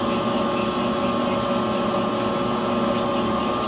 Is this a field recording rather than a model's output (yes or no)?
yes